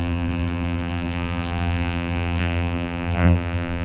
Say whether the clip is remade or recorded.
remade